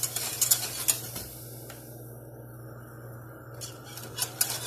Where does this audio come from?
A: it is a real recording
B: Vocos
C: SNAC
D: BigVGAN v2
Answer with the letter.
A